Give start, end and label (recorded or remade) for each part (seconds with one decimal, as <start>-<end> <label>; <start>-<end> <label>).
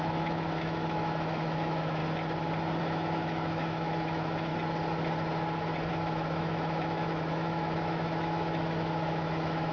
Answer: 0.0-2.0 remade; 2.0-2.8 recorded; 2.8-4.5 remade; 4.5-5.9 recorded; 5.9-9.7 remade